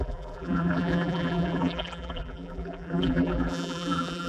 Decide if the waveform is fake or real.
fake